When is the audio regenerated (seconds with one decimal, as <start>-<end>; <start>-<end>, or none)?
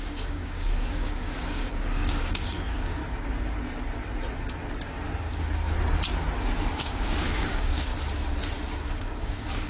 0.0-3.0; 6.8-7.9; 9.0-9.7